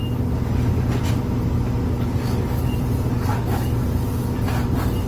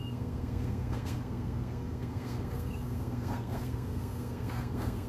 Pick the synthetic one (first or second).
second